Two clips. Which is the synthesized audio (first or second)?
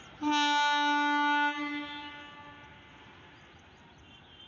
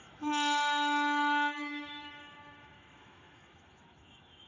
second